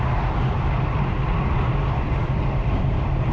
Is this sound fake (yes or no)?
no